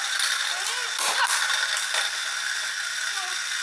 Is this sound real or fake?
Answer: real